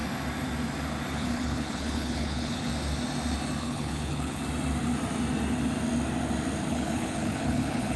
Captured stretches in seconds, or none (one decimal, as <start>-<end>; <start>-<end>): 0.0-1.1; 2.7-3.6; 4.4-6.7